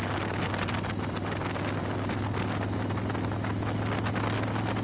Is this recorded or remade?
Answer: recorded